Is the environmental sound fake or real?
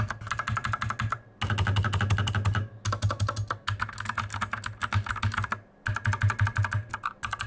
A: real